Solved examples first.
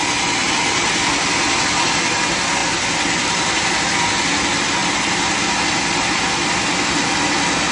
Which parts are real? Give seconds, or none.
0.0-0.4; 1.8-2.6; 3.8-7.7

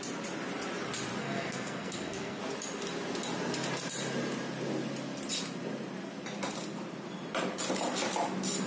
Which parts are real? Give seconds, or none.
0.0-1.2; 2.4-8.7

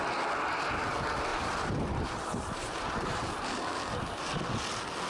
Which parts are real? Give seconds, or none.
0.0-1.3; 3.3-5.1

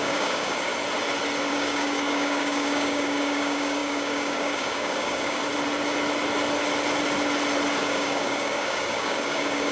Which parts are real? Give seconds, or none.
0.7-1.5; 5.4-7.8

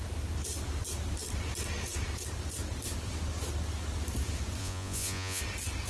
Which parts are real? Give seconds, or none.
0.0-4.6; 5.4-5.9

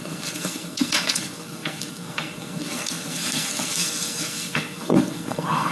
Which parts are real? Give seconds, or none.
none

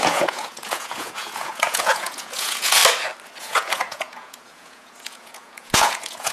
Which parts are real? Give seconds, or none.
2.8-3.4